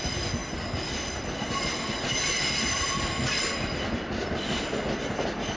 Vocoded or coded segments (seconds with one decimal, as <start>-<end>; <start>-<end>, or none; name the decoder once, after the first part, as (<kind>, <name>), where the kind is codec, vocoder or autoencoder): none